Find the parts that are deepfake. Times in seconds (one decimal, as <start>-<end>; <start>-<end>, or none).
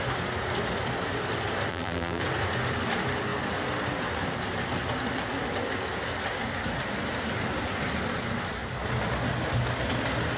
1.7-2.2